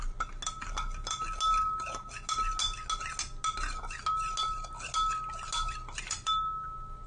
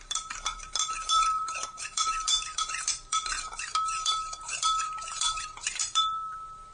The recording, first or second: first